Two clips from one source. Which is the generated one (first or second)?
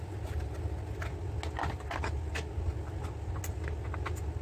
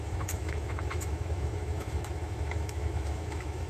second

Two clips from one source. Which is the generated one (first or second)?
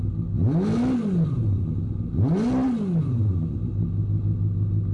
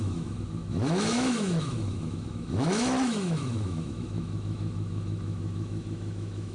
second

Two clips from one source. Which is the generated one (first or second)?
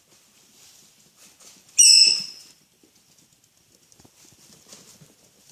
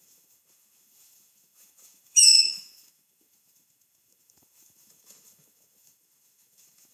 second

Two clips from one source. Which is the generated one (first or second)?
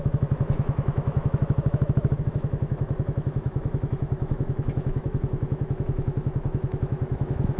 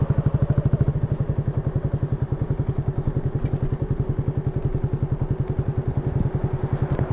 first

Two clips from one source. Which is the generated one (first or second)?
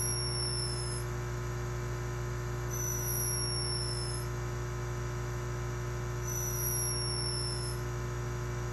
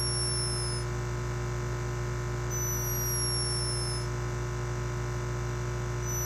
first